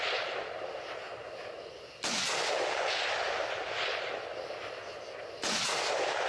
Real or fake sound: real